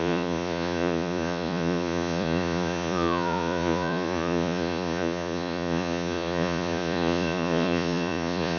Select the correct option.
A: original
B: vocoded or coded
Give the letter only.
B